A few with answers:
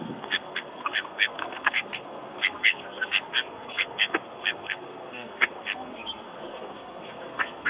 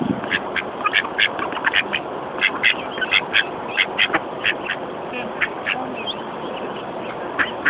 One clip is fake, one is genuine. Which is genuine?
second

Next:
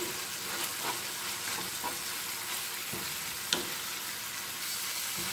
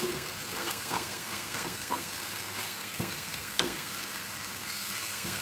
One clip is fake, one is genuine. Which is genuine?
first